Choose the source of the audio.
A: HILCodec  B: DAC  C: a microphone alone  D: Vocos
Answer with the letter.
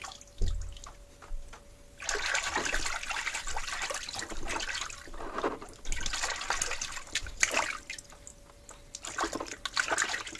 C